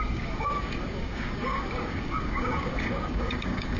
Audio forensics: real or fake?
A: fake